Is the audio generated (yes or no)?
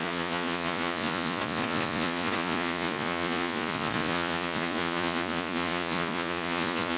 yes